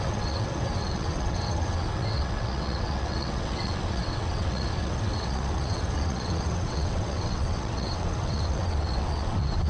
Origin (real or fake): fake